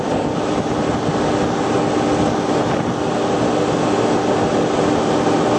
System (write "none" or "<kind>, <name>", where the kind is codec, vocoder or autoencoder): none